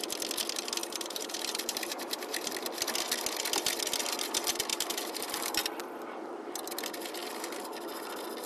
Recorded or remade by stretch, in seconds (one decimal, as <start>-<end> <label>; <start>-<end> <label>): 0.0-0.8 recorded; 0.8-2.5 remade; 2.5-4.7 recorded; 4.7-5.8 remade; 5.8-8.5 recorded